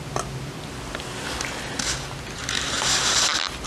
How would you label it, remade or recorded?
recorded